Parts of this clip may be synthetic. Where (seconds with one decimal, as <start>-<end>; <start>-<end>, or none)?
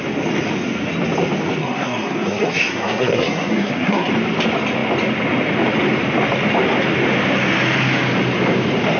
1.6-4.1